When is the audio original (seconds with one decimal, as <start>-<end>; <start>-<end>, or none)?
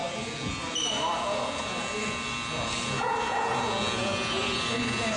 0.0-5.2